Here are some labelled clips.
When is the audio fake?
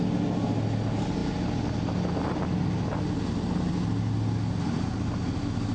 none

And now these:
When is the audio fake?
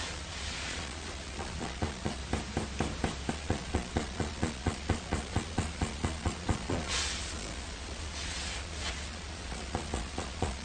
0.0-2.2 (vocoder, Vocos); 3.3-10.6